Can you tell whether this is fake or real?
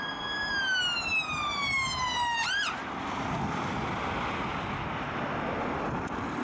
real